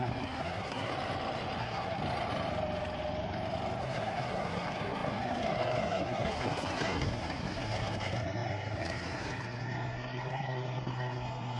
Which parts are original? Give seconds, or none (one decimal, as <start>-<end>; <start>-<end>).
0.9-1.6; 2.0-3.8